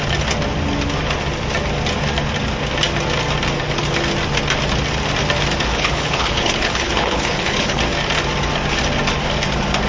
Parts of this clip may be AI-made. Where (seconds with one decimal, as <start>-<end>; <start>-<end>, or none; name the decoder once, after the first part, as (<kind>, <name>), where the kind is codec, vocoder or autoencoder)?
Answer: 5.7-7.8 (codec, HILCodec)